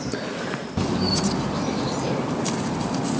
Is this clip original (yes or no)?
yes